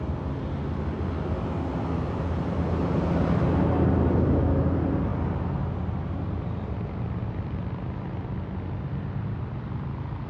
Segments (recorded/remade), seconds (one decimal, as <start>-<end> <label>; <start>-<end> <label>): 0.0-10.3 recorded